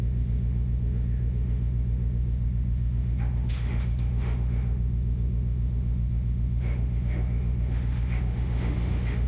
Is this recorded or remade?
remade